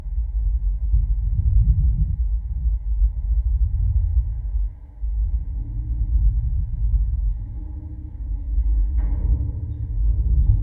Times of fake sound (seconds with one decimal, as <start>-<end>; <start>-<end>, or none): 6.9-8.9